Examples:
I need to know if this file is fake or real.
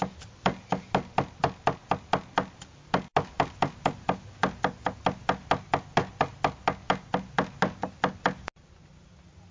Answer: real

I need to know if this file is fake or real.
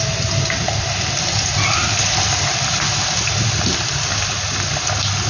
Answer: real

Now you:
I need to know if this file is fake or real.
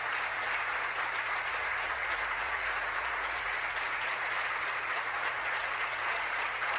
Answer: fake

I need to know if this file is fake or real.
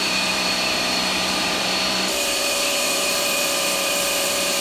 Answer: fake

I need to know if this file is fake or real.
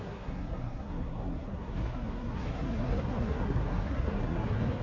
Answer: fake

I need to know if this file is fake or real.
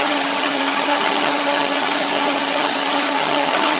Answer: fake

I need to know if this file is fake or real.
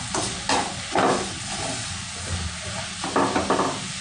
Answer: real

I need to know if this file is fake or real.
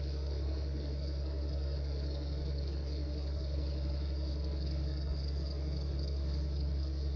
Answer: fake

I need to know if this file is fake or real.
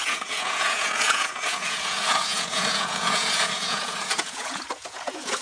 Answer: fake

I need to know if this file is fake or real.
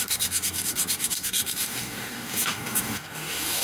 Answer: fake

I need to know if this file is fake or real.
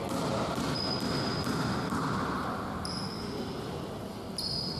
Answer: real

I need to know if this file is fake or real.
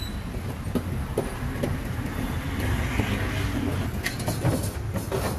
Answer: real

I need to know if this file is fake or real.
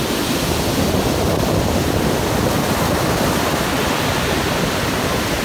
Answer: real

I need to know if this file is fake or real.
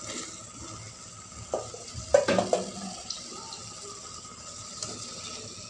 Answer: real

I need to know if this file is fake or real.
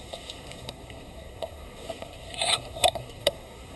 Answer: fake